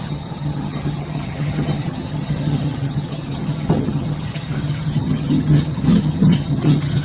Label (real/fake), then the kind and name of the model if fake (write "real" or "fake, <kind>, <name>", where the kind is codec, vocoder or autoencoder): fake, vocoder, HiFi-GAN